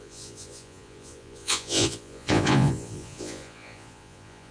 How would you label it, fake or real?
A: fake